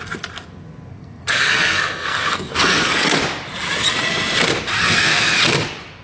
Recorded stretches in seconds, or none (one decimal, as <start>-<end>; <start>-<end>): 0.0-0.9; 3.1-4.8; 5.4-6.0